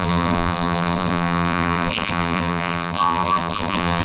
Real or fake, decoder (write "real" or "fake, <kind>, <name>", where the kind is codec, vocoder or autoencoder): fake, vocoder, BigVGAN v2